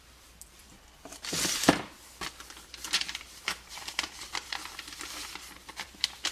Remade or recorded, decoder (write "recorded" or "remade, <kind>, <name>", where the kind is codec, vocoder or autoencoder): remade, vocoder, BigVGAN v2